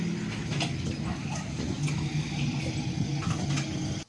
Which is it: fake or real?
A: real